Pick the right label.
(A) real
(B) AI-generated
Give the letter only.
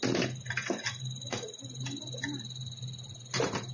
A